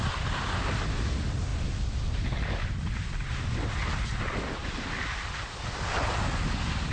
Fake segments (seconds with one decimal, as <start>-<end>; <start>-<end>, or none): none